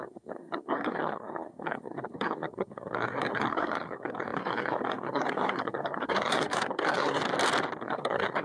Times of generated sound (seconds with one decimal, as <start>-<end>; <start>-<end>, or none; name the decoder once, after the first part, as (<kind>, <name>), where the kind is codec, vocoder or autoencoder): 0.0-7.2 (codec, SNAC); 7.8-8.4